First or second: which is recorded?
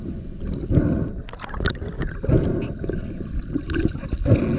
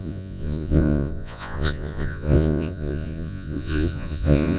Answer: first